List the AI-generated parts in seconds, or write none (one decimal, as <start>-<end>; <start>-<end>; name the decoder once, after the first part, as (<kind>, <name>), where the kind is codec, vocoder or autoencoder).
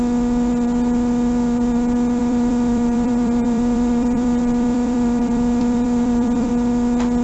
2.2-6.5 (vocoder, BigVGAN v2)